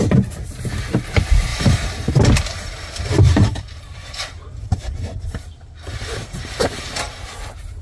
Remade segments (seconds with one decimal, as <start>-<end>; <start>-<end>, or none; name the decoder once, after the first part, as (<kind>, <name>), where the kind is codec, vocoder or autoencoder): 1.5-2.1 (vocoder, BigVGAN v2); 2.5-7.2